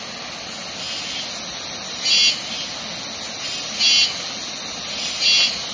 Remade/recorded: recorded